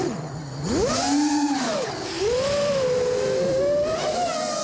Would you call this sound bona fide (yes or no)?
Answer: yes